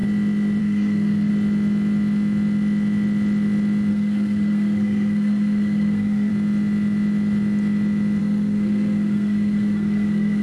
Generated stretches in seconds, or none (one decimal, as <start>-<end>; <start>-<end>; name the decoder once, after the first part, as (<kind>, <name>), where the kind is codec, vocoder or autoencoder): 0.6-1.3 (codec, SNAC); 3.9-6.3; 8.2-10.4